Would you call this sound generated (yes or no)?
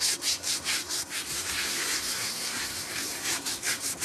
yes